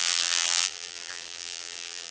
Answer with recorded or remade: remade